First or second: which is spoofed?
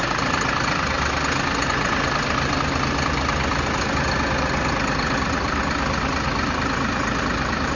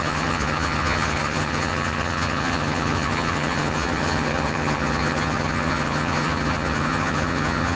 second